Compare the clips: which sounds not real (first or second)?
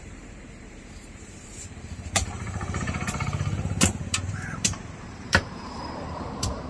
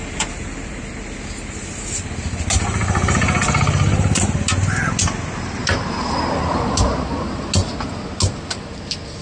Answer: first